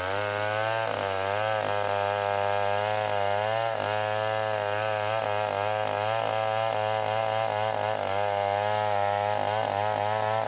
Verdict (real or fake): real